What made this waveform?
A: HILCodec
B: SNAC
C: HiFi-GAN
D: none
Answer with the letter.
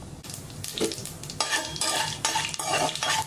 D